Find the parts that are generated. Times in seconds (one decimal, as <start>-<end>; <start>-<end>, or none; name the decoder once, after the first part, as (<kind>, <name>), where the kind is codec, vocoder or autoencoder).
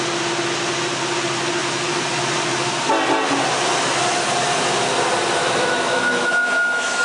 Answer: 5.4-7.0 (autoencoder, DAC-VAE)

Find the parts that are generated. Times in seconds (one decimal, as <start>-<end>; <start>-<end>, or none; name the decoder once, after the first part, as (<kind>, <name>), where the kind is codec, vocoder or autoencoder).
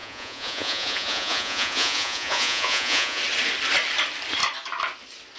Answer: 0.0-3.2 (vocoder, Vocos)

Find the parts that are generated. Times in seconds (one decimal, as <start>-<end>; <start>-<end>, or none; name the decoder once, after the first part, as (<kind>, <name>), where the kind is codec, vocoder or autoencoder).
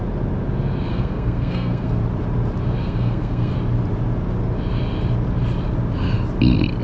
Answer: 0.9-2.0 (codec, SNAC); 2.8-3.5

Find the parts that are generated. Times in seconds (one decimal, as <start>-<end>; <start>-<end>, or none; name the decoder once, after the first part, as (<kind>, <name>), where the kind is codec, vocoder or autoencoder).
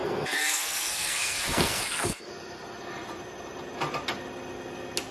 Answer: 0.0-2.3 (codec, SNAC)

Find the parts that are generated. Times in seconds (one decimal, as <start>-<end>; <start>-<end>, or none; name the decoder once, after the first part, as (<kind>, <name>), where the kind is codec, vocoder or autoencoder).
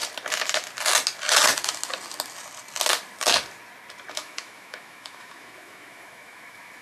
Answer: 4.1-6.8 (autoencoder, DAC-VAE)